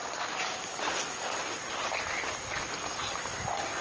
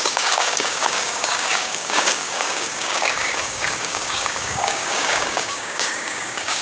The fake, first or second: second